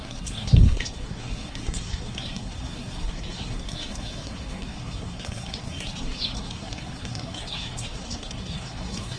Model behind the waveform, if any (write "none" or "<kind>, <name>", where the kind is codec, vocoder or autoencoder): codec, SNAC